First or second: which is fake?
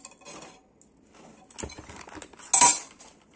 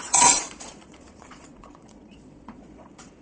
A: second